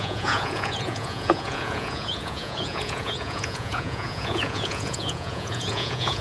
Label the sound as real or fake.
fake